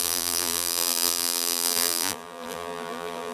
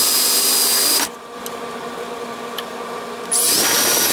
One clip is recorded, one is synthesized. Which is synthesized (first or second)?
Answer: first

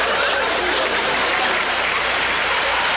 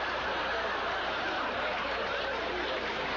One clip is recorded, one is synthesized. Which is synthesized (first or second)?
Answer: first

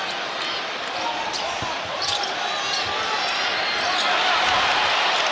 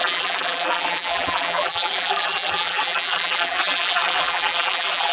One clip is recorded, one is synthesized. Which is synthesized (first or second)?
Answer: second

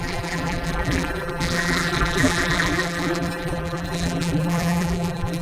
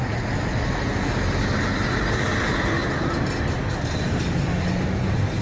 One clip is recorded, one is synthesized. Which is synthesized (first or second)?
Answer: first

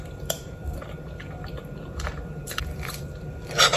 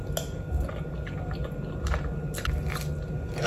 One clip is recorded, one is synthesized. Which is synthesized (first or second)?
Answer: first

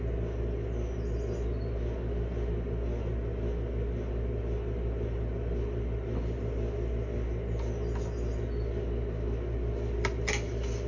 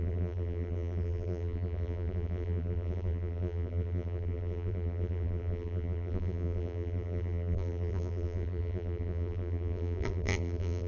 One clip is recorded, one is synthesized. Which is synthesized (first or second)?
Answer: second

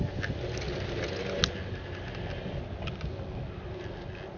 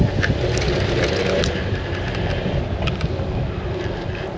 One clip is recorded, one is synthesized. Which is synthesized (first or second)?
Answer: second